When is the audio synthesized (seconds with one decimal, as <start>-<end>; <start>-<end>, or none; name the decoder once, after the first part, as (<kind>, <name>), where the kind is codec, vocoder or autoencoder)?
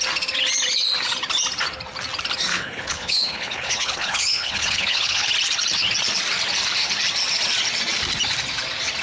2.5-5.3 (codec, HILCodec)